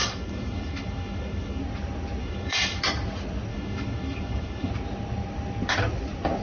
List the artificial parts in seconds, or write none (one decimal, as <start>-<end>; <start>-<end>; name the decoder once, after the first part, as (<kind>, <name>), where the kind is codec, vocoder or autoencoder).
0.0-1.6 (autoencoder, DAC-VAE); 2.2-2.8; 3.5-4.7